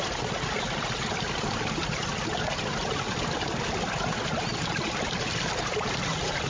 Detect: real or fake real